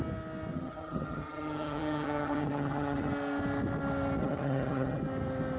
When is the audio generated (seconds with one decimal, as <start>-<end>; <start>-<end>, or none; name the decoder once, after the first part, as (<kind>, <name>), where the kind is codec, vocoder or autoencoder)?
0.5-3.1 (vocoder, HiFi-GAN); 4.2-5.0